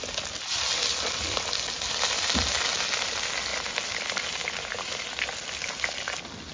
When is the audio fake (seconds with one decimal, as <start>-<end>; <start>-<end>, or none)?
3.5-4.2